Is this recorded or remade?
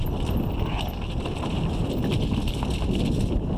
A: recorded